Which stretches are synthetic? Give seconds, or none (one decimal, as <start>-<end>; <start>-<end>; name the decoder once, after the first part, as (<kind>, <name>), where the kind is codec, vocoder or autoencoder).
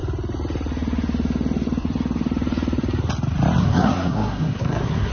3.6-5.1 (codec, SNAC)